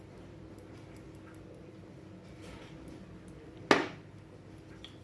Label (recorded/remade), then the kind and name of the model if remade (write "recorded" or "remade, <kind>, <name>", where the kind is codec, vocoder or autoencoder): recorded